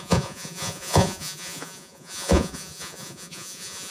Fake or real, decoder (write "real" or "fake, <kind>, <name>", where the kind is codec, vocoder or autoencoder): fake, vocoder, Vocos